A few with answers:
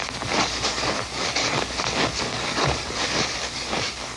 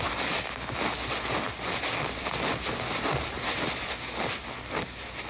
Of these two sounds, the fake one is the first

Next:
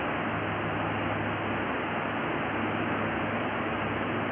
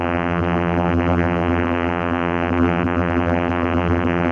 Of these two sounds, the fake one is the second